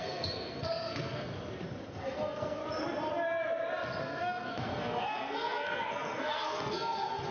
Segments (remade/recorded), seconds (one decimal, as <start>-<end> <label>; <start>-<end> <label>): 0.0-1.3 remade; 1.3-1.9 recorded; 1.9-2.6 remade; 2.6-4.0 recorded; 4.0-7.3 remade